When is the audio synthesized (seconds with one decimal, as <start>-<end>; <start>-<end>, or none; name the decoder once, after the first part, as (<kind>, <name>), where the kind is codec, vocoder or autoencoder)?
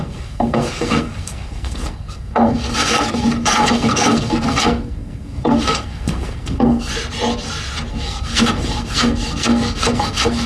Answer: 0.0-6.9 (codec, SNAC); 7.9-10.5